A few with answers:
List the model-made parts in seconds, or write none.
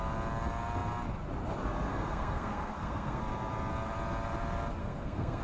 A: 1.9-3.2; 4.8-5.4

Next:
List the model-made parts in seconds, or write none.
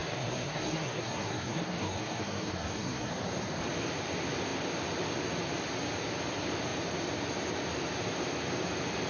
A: 0.0-3.1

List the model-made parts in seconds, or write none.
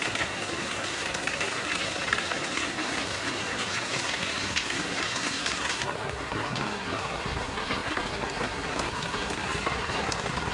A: 0.0-10.5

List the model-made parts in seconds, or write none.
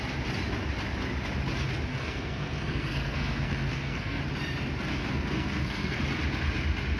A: 1.9-4.2; 4.9-6.0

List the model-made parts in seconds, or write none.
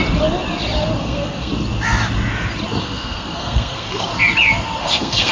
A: 1.0-1.5; 2.8-4.1; 4.8-5.3